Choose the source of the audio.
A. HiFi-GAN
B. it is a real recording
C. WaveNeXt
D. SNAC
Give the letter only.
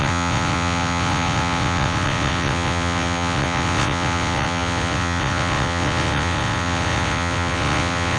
C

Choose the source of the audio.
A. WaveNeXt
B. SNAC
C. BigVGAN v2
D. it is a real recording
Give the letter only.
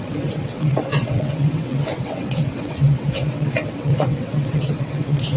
A